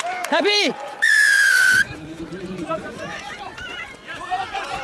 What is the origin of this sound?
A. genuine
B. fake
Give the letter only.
B